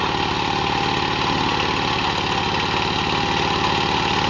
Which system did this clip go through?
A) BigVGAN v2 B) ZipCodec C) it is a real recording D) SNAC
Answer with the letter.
C